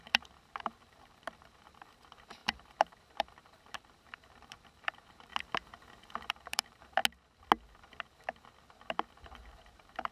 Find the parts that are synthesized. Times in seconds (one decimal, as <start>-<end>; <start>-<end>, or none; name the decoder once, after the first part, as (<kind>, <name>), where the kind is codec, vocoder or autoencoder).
0.0-5.3 (vocoder, BigVGAN v2); 6.3-7.0; 9.1-10.1